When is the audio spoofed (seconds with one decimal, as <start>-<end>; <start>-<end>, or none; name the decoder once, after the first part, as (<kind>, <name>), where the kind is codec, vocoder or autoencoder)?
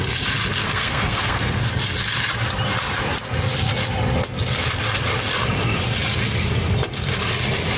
0.6-1.6 (codec, SNAC)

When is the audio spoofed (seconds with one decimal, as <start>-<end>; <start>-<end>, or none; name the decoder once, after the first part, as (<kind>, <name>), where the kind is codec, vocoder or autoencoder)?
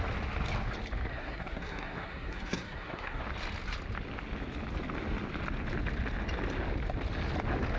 1.1-3.2 (codec, SNAC)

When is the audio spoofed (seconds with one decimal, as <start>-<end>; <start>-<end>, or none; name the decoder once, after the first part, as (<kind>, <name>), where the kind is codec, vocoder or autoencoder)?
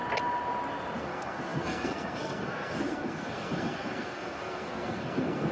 1.0-5.5 (codec, SNAC)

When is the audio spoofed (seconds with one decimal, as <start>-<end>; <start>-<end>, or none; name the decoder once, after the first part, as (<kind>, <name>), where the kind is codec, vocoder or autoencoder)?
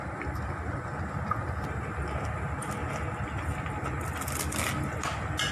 none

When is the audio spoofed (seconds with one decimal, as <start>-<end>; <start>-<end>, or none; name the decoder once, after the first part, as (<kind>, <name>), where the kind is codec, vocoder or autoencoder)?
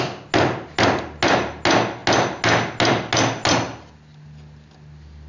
none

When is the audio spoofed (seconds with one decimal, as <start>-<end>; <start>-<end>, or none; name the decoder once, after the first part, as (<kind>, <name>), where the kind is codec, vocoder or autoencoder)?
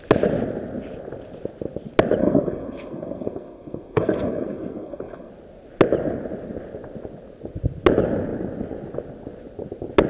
2.2-5.3 (codec, SNAC)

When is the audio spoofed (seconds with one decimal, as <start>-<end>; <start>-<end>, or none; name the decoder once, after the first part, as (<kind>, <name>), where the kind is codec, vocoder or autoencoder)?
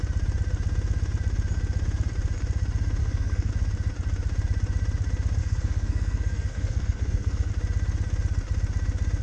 3.0-3.5 (codec, SNAC); 5.4-7.5